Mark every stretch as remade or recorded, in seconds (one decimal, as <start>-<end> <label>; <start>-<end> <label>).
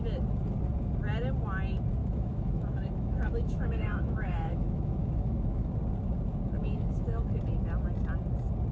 0.0-2.0 recorded; 2.0-5.7 remade; 5.7-6.6 recorded; 6.6-7.4 remade; 7.4-8.7 recorded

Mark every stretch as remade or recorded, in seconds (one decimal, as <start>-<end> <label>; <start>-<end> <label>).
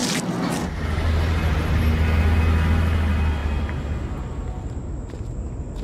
0.0-5.8 recorded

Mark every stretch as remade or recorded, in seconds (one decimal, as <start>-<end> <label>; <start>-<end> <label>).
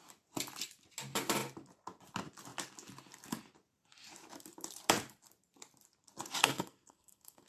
0.0-6.4 recorded; 6.4-7.5 remade